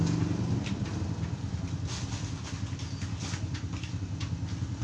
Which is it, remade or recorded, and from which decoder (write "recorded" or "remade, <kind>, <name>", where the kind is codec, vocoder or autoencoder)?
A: recorded